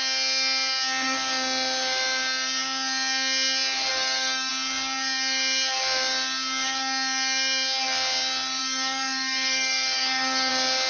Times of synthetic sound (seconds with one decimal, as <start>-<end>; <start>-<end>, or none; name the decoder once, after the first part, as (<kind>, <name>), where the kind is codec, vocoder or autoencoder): 3.9-4.5 (codec, DAC); 8.6-10.5